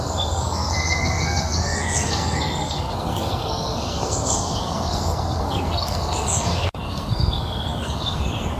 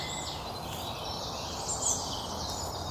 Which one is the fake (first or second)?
first